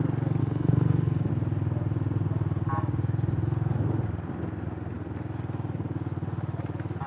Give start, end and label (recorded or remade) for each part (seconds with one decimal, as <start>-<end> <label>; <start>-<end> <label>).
0.0-0.4 recorded; 0.4-1.3 remade; 1.3-7.1 recorded